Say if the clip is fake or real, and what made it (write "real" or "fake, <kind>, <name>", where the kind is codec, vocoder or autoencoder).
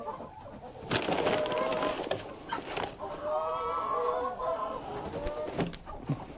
real